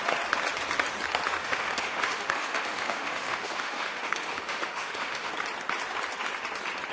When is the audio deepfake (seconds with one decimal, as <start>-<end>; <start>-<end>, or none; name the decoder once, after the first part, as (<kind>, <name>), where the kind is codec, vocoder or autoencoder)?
1.4-5.3 (autoencoder, DAC-VAE)

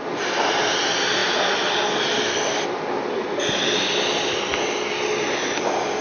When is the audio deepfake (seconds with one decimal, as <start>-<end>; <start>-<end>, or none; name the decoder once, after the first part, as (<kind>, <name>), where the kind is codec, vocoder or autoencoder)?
none